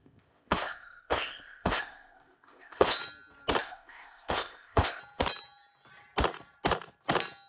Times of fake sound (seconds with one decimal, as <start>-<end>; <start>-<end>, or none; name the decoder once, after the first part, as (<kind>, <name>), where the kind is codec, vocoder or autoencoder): 0.0-3.0 (codec, ZipCodec); 3.6-5.0